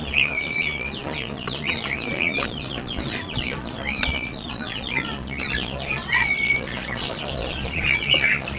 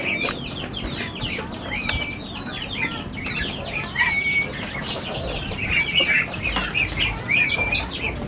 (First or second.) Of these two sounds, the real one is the second